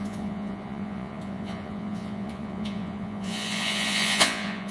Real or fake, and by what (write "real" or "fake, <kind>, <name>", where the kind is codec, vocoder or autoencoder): fake, vocoder, Vocos